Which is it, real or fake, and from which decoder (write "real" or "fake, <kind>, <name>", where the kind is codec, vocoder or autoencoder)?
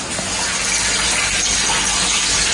real